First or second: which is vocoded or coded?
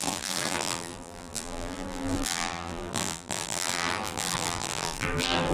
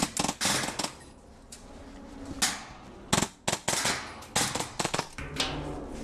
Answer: first